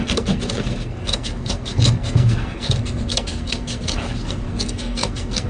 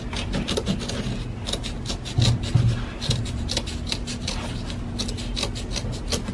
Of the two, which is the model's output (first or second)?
first